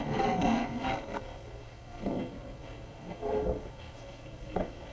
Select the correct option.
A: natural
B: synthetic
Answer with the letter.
B